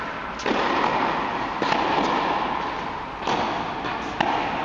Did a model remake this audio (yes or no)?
no